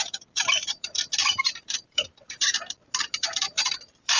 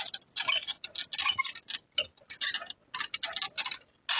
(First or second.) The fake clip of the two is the first